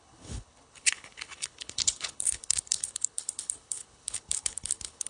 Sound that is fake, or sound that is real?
fake